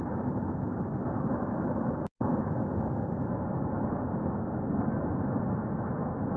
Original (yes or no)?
yes